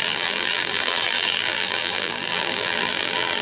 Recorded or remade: remade